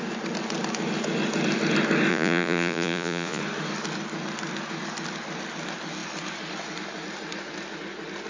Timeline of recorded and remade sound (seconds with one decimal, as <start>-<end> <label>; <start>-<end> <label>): 0.0-2.1 recorded; 2.1-3.4 remade; 3.4-8.3 recorded